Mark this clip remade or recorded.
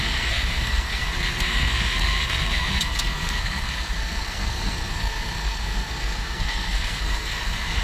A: remade